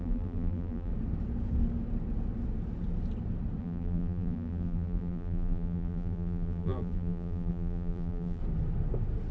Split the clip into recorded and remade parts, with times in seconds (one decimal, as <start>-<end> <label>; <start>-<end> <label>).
0.0-0.9 remade; 0.9-3.6 recorded; 3.6-8.4 remade; 8.4-9.3 recorded